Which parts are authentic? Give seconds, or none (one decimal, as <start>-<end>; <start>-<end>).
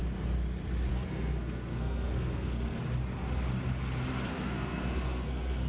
0.0-0.9; 2.8-4.3